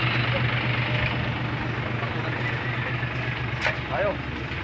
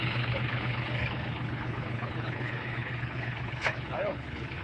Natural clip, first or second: first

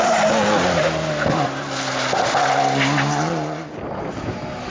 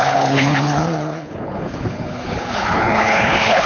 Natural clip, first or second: first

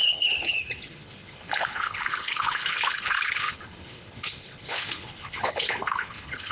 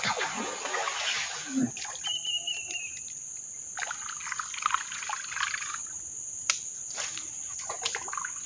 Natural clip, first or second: second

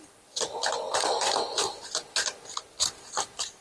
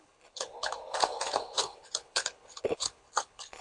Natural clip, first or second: first